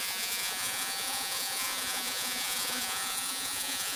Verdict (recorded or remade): remade